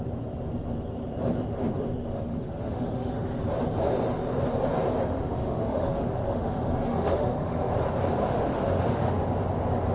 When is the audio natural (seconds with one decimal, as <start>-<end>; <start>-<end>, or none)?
0.0-2.1; 3.4-5.1; 7.7-8.2; 9.2-9.9